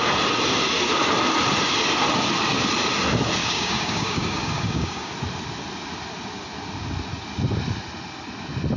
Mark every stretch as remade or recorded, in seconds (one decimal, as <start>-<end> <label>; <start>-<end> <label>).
0.0-3.4 recorded; 3.4-5.1 remade; 5.1-8.8 recorded